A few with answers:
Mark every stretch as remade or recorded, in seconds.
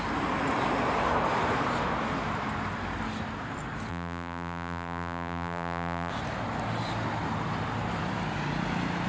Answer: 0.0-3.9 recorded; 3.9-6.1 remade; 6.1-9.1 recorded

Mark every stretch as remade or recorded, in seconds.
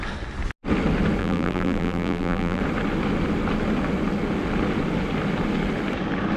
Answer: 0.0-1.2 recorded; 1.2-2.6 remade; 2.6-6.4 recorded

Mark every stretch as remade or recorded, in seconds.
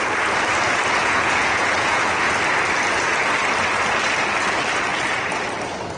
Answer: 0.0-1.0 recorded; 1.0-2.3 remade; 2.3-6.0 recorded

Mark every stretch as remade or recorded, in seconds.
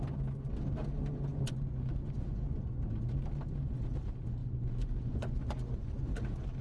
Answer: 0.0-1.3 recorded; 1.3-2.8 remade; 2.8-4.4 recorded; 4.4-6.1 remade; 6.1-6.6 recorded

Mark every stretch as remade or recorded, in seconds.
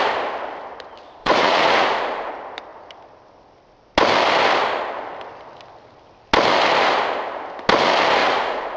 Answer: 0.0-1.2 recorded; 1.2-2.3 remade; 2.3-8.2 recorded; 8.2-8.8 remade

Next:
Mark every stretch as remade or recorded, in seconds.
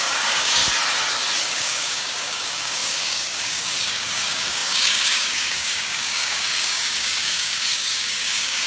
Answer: 0.0-0.6 remade; 0.6-1.4 recorded; 1.4-8.7 remade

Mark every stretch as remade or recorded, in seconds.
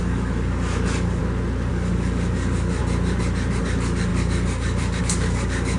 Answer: 0.0-1.2 remade; 1.2-1.7 recorded; 1.7-2.8 remade; 2.8-3.6 recorded; 3.6-5.8 remade